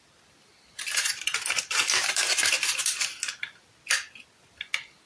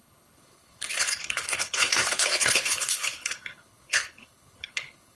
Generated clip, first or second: second